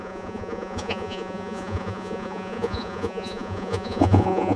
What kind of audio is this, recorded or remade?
remade